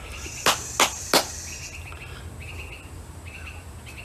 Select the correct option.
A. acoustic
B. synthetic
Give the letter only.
A